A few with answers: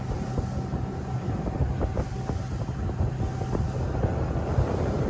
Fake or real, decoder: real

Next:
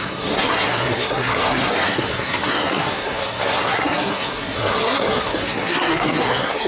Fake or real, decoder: fake, codec, SNAC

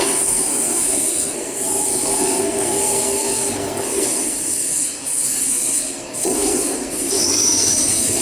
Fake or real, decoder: fake, codec, SNAC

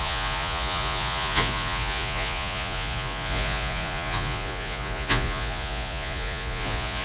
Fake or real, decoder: fake, vocoder, Vocos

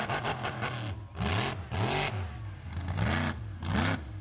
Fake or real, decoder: real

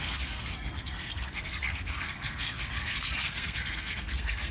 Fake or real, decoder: fake, codec, SNAC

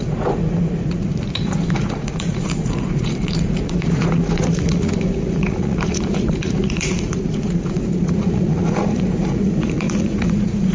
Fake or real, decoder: fake, vocoder, Vocos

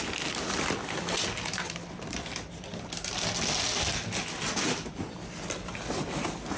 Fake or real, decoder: real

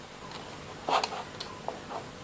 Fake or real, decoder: real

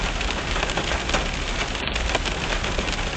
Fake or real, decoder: real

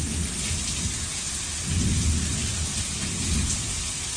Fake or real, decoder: real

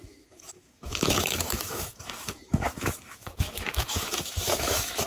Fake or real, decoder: fake, autoencoder, DAC-VAE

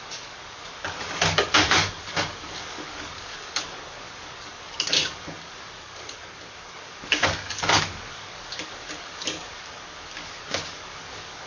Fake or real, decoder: fake, codec, DAC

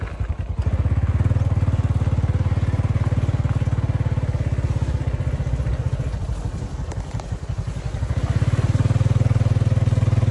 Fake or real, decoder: real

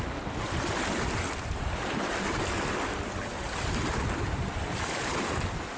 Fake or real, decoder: real